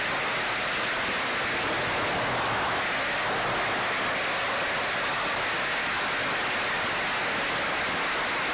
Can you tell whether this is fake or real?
real